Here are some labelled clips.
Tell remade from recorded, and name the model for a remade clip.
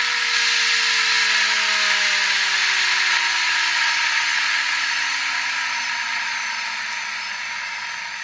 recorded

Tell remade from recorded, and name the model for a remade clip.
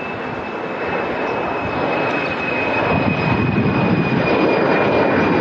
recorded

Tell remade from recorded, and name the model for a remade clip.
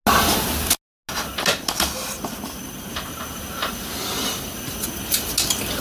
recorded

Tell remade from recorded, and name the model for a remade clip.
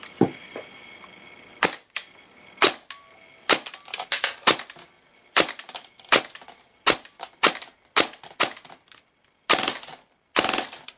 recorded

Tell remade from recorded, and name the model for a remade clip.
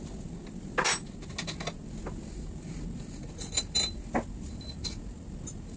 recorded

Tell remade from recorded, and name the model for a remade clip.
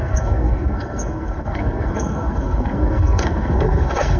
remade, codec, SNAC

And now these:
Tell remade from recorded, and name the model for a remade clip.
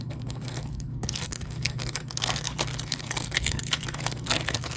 remade, codec, SNAC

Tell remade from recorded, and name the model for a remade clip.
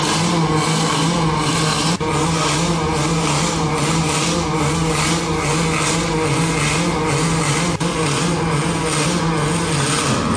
recorded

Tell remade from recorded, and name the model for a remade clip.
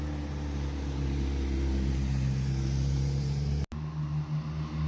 recorded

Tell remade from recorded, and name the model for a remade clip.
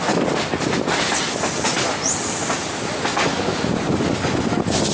recorded